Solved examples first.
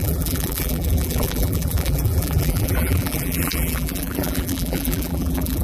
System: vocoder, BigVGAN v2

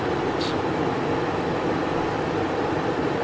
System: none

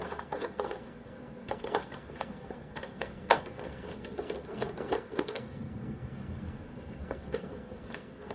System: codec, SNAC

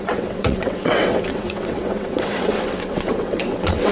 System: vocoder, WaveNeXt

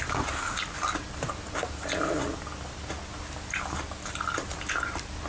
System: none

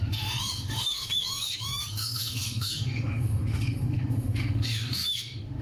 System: autoencoder, DAC-VAE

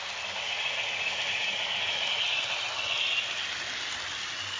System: none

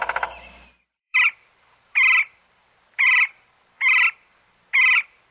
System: vocoder, BigVGAN v2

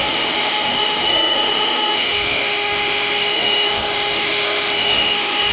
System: autoencoder, DAC-VAE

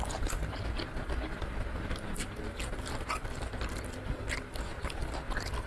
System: none